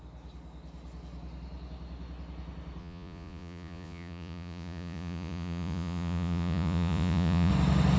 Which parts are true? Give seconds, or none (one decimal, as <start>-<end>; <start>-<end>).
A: 0.0-2.8; 7.5-8.0